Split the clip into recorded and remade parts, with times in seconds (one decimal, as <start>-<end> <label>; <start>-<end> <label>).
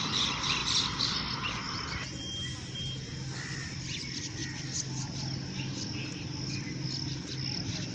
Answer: 0.0-7.9 recorded